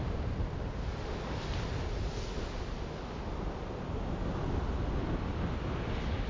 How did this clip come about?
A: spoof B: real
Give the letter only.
B